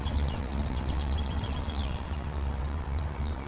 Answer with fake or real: fake